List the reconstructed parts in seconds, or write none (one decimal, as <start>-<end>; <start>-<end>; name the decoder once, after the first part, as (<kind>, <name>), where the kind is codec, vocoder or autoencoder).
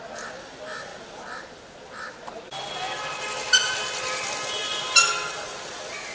none